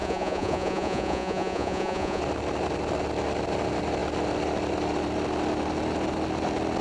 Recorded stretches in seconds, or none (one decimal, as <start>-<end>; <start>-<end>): 2.2-6.8